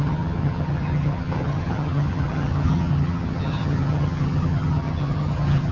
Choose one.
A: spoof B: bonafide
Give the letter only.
A